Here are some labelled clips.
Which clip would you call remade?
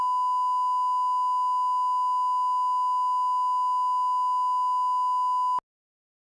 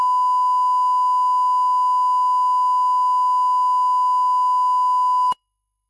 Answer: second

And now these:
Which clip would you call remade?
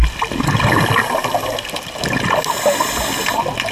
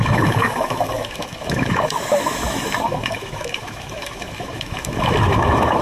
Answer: second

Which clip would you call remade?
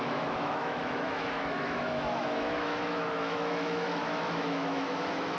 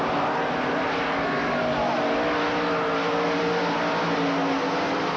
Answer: first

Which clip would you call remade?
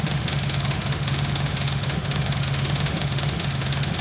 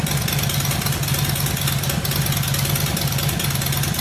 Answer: first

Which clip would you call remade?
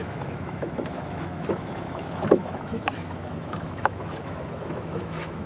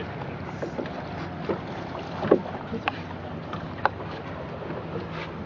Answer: first